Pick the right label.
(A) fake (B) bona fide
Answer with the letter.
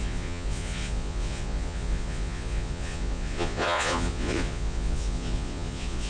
A